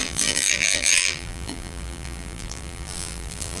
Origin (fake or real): fake